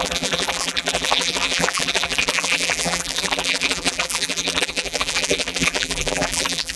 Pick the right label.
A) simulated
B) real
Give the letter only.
A